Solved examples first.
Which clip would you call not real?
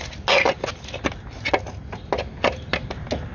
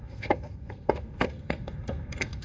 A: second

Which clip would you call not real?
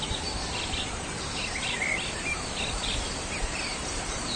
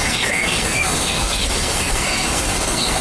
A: second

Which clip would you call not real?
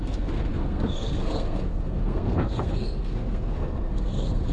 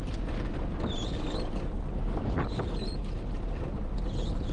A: first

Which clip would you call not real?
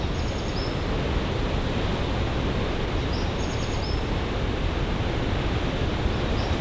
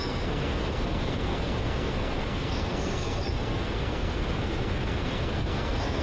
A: second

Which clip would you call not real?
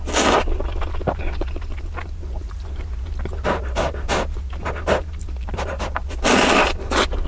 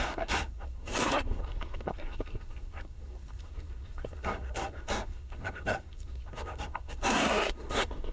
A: second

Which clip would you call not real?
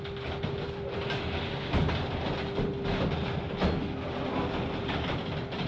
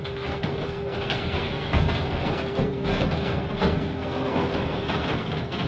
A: second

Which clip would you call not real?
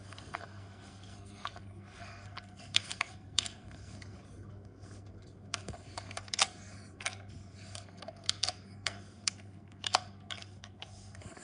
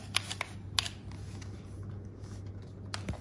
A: first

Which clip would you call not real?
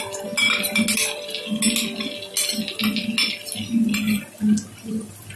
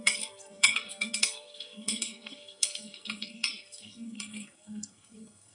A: second